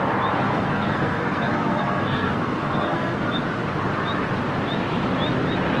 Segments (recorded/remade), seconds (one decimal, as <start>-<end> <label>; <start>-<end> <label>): 0.0-0.5 recorded; 0.5-3.3 remade; 3.3-5.8 recorded